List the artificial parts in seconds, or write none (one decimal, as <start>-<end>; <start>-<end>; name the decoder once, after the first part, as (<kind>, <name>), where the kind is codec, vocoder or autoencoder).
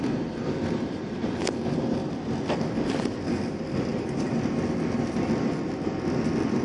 none